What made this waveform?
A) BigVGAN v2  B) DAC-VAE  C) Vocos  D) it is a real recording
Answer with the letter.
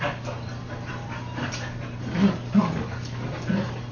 D